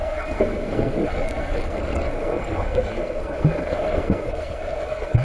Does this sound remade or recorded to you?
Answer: remade